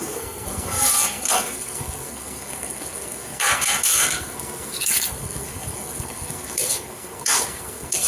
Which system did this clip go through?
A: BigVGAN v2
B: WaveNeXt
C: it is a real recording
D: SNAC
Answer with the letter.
D